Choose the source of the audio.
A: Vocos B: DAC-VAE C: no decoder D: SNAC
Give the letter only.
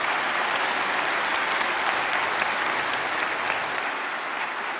C